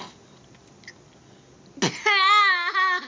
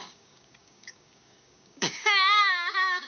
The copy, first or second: second